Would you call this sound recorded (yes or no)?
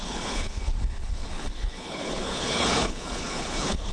no